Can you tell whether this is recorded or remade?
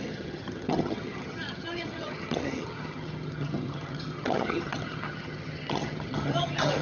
remade